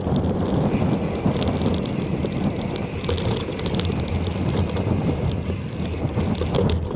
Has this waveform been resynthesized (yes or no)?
no